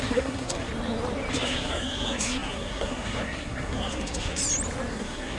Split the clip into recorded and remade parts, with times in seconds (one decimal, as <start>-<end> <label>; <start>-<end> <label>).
0.0-0.7 remade; 0.7-1.3 recorded; 1.3-4.4 remade; 4.4-4.9 recorded; 4.9-5.4 remade